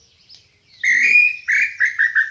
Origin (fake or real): real